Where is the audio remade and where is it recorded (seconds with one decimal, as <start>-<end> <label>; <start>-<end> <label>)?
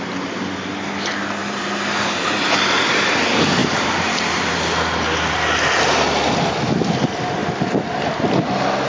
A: 0.0-1.4 recorded; 1.4-3.1 remade; 3.1-3.6 recorded; 3.6-4.2 remade; 4.2-8.9 recorded